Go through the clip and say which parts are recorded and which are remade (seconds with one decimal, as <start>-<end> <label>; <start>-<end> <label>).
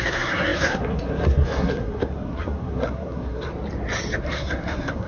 0.0-3.5 remade; 3.5-4.2 recorded; 4.2-5.1 remade